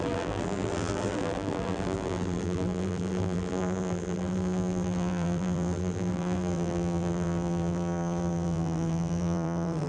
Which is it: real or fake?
fake